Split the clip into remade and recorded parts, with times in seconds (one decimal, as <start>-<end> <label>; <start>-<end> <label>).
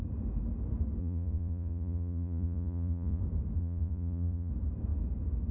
0.0-1.0 recorded; 1.0-3.2 remade; 3.2-3.6 recorded; 3.6-4.5 remade; 4.5-5.5 recorded